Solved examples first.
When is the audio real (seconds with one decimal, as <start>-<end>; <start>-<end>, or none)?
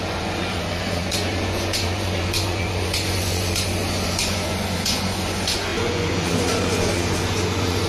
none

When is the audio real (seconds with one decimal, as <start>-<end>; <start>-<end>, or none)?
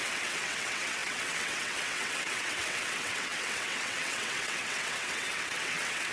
none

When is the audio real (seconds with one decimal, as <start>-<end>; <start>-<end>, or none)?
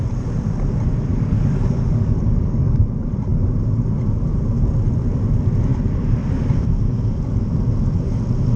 0.0-1.1; 2.8-8.6